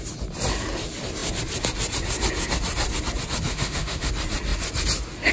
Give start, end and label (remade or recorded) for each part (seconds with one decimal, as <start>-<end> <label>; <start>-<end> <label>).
0.0-3.5 recorded; 3.5-4.1 remade; 4.1-5.3 recorded